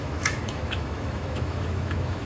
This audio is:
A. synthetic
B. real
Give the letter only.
A